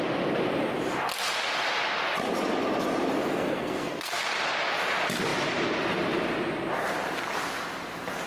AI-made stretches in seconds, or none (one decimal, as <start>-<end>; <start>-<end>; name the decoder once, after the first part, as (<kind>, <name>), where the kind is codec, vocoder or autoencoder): 3.3-4.2 (codec, SNAC)